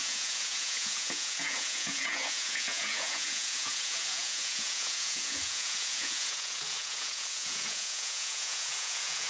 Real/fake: fake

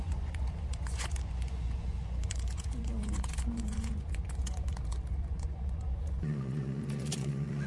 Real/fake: fake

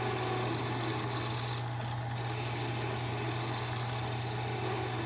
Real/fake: real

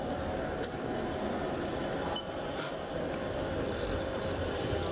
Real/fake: real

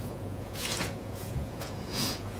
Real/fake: fake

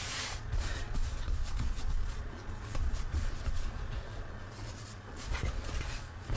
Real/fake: fake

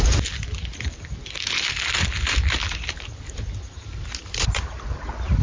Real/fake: real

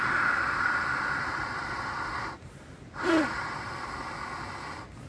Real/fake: real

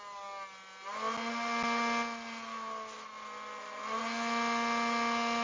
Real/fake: real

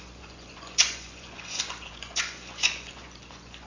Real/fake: fake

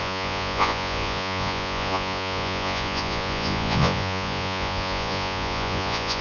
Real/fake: fake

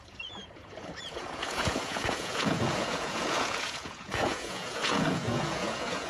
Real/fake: fake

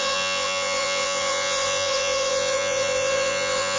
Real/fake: fake